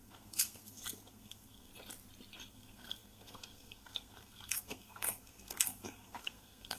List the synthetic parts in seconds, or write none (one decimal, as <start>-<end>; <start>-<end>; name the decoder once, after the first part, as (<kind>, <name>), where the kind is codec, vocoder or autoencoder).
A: 0.0-1.7 (codec, SNAC); 2.5-6.8